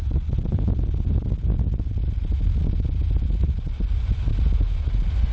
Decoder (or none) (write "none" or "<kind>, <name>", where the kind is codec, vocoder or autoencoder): none